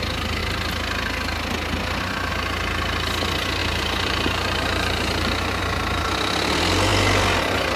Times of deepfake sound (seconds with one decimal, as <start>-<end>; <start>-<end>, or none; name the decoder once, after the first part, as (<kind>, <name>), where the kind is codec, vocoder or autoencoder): 3.6-5.6 (vocoder, BigVGAN v2)